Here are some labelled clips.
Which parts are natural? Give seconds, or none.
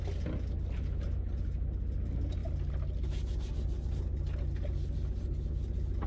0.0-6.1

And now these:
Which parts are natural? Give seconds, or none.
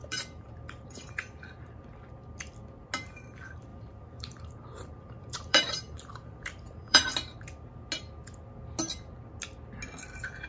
1.8-3.7; 7.1-10.5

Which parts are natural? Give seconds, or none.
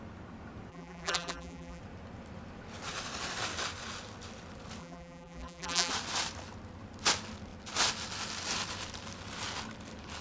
0.0-0.7; 1.8-4.8; 5.9-10.2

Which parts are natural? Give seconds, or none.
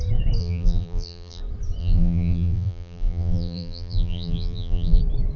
0.0-0.4; 1.4-1.8; 5.0-5.4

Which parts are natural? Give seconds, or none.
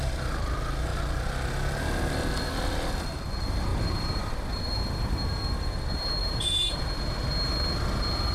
0.0-3.7; 4.7-6.2; 6.8-8.3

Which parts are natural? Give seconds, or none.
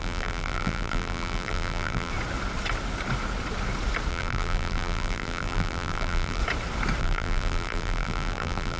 2.1-4.1; 6.4-7.0